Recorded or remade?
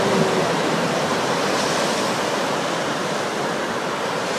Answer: recorded